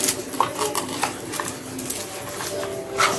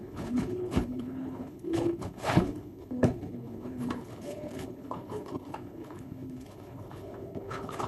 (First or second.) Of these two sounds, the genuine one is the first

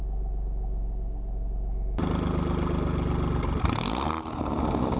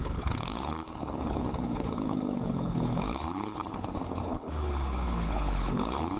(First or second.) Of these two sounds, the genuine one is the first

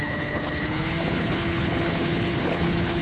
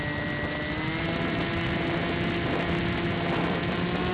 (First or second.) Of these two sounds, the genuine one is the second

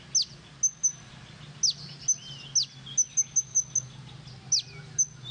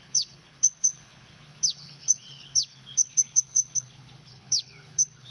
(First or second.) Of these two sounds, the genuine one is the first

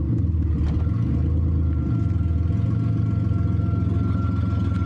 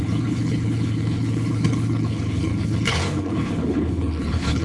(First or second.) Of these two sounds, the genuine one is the first